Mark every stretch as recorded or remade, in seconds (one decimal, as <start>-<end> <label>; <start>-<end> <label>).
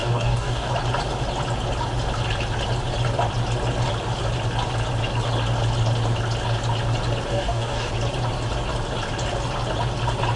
0.0-0.7 remade; 0.7-7.3 recorded; 7.3-7.9 remade; 7.9-10.4 recorded